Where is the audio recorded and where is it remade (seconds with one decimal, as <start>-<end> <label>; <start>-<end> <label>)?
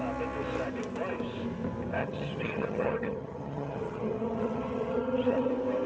0.0-2.0 recorded; 2.0-5.5 remade; 5.5-5.9 recorded